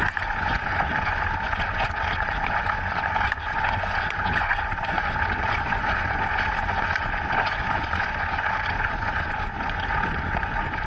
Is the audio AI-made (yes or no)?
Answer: yes